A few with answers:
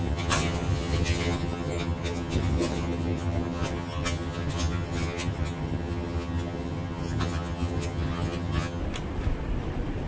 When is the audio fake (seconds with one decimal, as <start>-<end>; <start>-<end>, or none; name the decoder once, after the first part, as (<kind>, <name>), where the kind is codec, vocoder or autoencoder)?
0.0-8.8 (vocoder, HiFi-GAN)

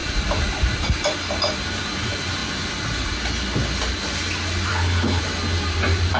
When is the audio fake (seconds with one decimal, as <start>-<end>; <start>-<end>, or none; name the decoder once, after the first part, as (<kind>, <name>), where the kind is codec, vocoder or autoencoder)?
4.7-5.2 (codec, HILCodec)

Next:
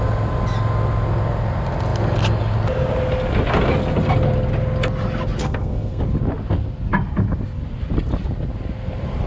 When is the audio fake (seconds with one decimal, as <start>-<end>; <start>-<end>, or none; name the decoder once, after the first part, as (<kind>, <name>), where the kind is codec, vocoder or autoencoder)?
5.4-6.0 (codec, SNAC)